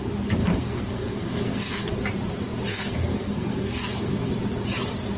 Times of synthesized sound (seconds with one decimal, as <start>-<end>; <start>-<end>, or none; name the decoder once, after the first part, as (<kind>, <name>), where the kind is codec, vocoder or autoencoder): 0.4-1.9 (codec, SNAC); 2.7-4.3